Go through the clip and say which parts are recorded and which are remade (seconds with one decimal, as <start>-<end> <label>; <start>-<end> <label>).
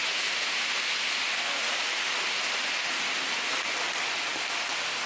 0.0-5.1 recorded